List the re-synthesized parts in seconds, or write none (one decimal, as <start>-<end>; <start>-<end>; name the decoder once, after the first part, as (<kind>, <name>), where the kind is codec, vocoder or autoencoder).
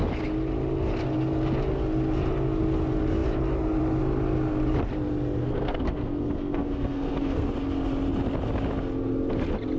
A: 5.4-7.5 (codec, SNAC)